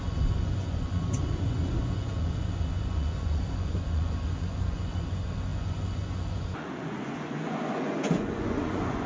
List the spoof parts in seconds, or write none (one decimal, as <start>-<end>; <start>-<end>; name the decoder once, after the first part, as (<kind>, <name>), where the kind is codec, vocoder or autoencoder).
0.0-9.1 (vocoder, Vocos)